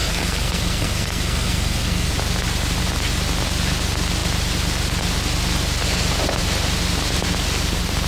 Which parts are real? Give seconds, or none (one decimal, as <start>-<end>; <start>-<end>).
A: 2.1-8.1